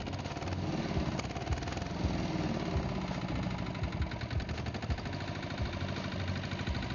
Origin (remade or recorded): recorded